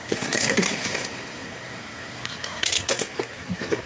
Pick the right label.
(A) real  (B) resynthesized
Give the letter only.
B